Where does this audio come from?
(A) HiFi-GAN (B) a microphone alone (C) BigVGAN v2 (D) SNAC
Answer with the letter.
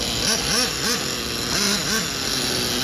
B